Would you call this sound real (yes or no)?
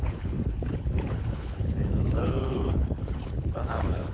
no